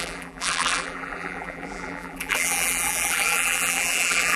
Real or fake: fake